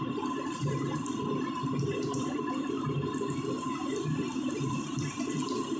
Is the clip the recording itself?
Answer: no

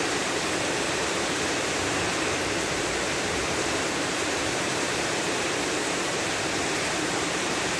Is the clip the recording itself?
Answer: no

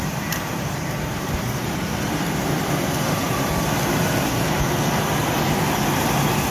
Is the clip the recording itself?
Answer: no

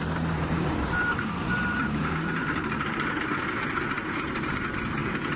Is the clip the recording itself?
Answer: no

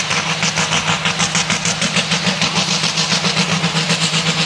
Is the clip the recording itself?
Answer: yes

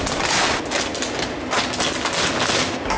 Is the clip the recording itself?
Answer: yes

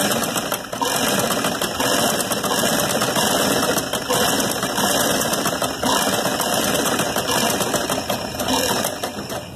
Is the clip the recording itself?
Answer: yes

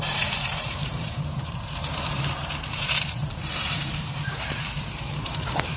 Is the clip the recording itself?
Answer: no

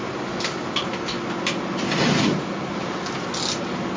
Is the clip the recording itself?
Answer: yes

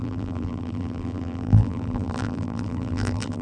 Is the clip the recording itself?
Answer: no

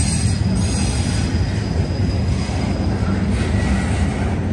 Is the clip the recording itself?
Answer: yes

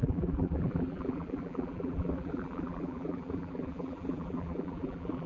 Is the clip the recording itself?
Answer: no